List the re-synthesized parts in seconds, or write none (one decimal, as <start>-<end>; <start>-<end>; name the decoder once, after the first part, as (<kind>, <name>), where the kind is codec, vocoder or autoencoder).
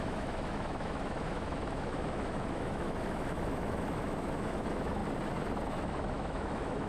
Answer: 0.0-5.0 (autoencoder, DAC-VAE); 5.7-6.9